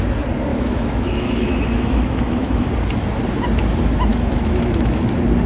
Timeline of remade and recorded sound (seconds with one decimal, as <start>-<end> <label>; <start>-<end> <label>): 0.0-0.5 recorded; 0.5-2.7 remade; 2.7-4.1 recorded; 4.1-5.0 remade; 5.0-5.5 recorded